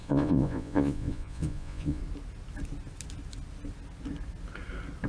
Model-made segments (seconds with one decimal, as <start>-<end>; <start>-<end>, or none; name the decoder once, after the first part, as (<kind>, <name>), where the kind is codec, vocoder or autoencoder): 0.0-2.0 (vocoder, Vocos)